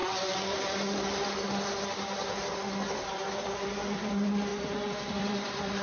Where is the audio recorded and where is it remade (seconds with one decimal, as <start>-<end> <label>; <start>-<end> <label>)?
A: 0.0-2.9 recorded; 2.9-4.5 remade; 4.5-5.1 recorded; 5.1-5.8 remade

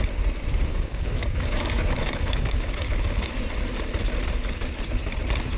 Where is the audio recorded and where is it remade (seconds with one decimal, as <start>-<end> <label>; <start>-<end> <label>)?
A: 0.0-0.7 recorded; 0.7-3.3 remade; 3.3-5.6 recorded

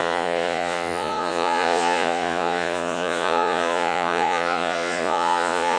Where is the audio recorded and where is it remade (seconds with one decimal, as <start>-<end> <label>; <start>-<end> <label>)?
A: 0.0-5.8 remade

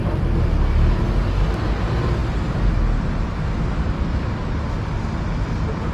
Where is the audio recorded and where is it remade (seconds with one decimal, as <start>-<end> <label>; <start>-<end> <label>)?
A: 0.0-5.9 recorded

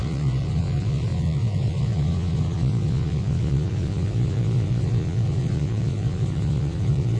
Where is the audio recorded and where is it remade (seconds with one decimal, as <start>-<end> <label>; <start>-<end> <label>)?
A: 0.0-7.2 remade

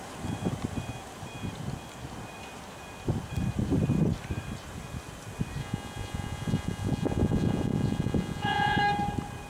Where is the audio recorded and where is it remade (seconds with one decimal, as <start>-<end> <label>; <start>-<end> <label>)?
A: 0.0-5.6 recorded; 5.6-8.8 remade; 8.8-9.5 recorded